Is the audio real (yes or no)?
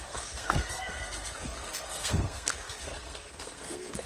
no